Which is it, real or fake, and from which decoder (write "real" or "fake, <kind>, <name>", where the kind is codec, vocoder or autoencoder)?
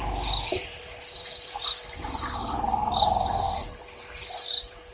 fake, vocoder, BigVGAN v2